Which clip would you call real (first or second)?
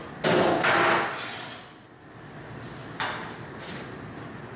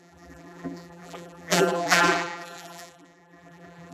first